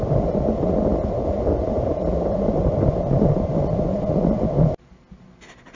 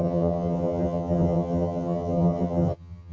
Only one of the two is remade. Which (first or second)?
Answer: second